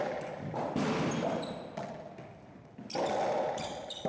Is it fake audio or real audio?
real